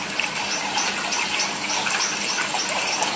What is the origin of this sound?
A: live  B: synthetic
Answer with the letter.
A